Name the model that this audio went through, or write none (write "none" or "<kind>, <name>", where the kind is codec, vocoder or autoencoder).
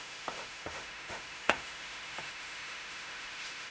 autoencoder, DAC-VAE